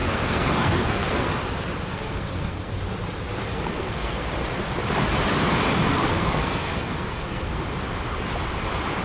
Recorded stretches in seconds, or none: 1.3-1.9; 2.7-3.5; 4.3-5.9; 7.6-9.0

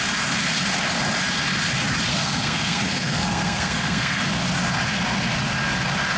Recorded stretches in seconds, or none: 0.0-2.1; 4.2-6.2

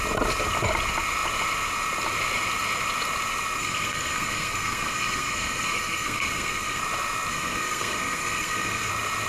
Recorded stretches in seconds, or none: 0.0-3.6; 6.8-7.3; 8.9-9.3

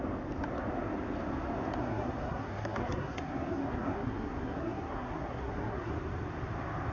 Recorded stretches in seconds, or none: 0.0-1.8; 5.9-6.9

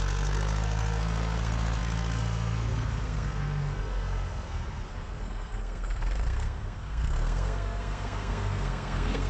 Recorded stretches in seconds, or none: none